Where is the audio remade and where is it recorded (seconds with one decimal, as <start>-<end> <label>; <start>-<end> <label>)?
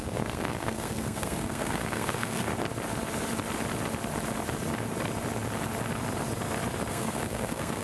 0.0-2.5 remade; 2.5-6.9 recorded; 6.9-7.8 remade